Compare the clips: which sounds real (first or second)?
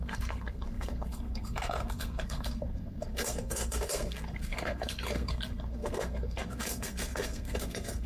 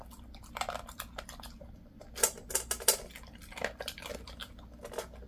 second